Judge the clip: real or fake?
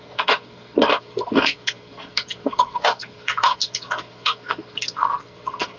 fake